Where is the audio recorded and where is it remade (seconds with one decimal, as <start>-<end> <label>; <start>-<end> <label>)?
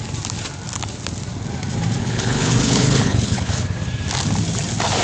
0.0-2.0 recorded; 2.0-3.5 remade; 3.5-5.0 recorded